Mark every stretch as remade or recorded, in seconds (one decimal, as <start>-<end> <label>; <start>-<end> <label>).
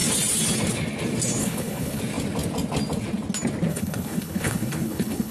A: 0.0-1.4 recorded; 1.4-2.0 remade; 2.0-3.7 recorded; 3.7-5.3 remade